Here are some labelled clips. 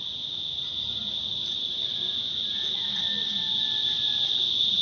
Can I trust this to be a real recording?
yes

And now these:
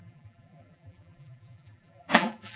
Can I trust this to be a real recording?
no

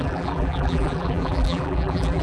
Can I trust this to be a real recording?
no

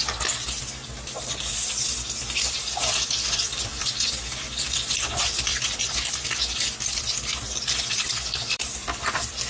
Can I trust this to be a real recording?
no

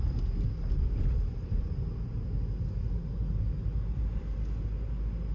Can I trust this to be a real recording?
yes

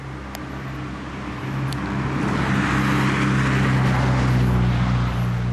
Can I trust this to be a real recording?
yes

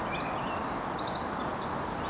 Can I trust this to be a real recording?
yes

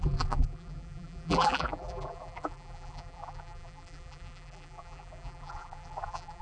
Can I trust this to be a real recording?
no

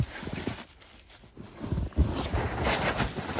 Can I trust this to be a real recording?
yes